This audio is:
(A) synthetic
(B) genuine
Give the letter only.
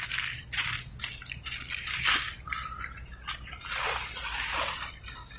B